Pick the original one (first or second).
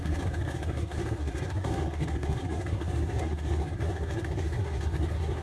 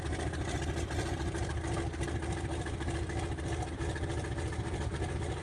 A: second